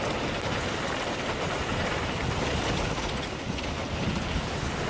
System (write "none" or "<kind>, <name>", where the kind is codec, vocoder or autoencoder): none